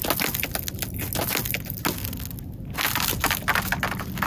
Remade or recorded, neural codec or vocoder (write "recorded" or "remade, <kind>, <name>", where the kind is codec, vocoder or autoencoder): recorded